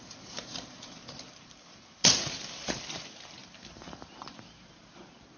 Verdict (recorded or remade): remade